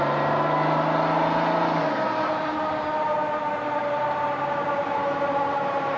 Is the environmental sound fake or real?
real